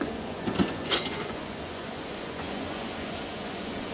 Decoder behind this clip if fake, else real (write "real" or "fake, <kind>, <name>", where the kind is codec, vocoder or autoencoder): fake, vocoder, Vocos